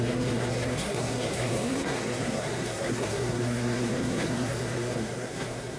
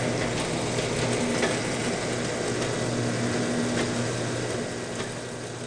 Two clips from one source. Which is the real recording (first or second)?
second